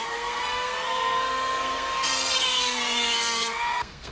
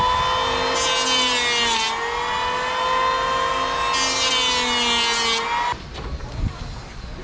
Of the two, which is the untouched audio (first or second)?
second